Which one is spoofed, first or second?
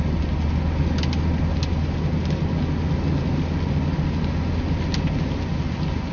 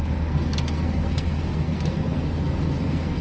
second